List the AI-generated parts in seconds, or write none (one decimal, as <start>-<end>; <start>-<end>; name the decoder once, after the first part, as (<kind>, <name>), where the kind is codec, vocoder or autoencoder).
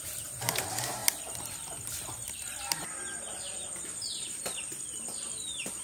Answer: none